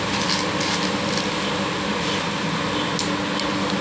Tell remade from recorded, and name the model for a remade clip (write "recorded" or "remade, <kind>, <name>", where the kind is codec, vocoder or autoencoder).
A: recorded